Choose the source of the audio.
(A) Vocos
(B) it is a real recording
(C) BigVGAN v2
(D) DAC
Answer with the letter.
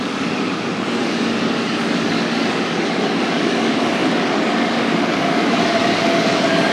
D